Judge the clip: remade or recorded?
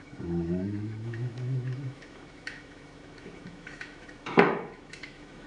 remade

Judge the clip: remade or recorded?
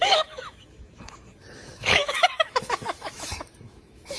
remade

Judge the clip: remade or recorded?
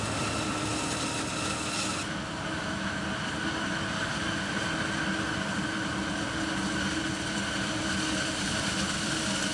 recorded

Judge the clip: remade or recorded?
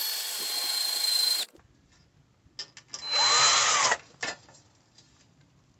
recorded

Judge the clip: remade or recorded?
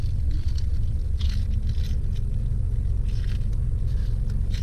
recorded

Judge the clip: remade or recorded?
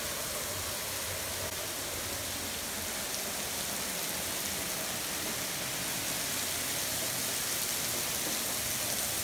recorded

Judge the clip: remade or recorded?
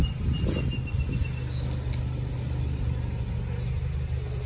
recorded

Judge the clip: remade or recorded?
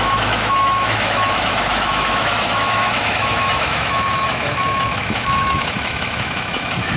remade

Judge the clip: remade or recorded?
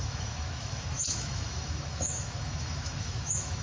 remade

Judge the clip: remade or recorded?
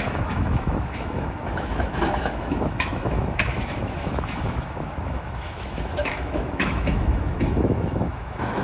remade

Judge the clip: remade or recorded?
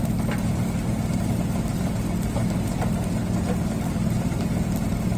recorded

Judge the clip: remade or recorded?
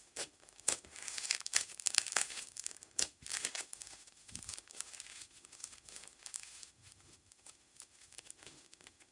remade